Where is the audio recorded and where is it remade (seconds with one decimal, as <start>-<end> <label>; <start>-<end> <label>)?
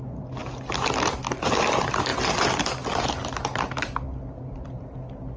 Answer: 0.0-5.4 recorded